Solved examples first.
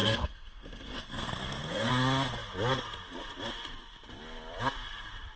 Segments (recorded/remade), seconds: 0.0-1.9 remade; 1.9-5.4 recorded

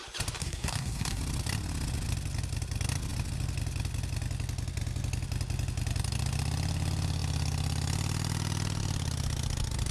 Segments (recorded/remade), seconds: 0.0-0.4 recorded; 0.4-1.2 remade; 1.2-9.9 recorded

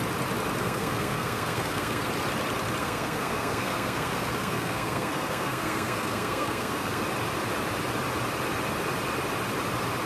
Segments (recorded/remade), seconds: 0.0-0.6 recorded; 0.6-2.1 remade; 2.1-2.8 recorded; 2.8-7.0 remade; 7.0-10.1 recorded

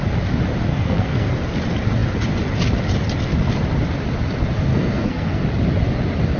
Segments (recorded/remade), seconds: 0.0-0.7 recorded; 0.7-1.3 remade; 1.3-4.7 recorded; 4.7-5.4 remade; 5.4-6.4 recorded